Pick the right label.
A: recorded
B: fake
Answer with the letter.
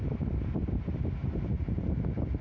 A